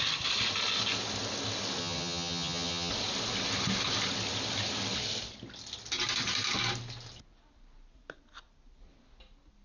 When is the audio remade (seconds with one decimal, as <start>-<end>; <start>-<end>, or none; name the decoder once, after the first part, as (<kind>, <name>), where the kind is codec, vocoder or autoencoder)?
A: 1.8-2.9 (vocoder, HiFi-GAN)